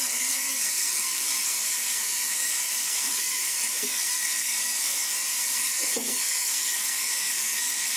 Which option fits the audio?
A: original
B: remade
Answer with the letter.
B